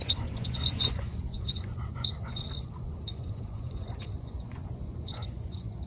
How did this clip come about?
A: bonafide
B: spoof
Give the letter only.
B